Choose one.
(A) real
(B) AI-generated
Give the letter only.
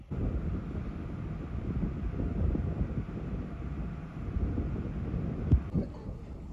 A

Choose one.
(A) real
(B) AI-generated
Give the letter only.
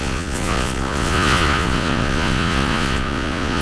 B